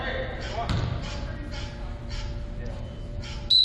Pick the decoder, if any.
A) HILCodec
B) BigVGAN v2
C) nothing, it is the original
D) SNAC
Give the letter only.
C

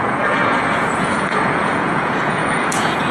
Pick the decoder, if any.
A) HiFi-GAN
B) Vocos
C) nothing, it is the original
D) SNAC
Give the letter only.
B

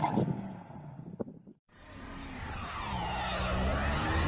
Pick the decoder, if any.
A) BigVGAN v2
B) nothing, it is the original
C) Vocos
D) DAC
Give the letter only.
B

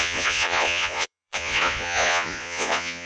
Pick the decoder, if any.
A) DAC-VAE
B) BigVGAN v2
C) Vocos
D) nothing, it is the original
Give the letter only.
C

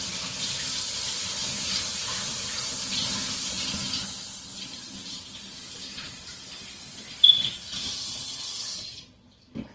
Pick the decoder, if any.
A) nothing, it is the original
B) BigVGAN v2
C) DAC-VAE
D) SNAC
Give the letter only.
A